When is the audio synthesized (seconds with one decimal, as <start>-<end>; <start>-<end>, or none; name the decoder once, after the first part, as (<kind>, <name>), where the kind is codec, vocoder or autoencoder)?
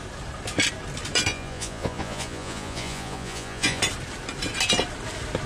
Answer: 1.3-3.8 (vocoder, Vocos)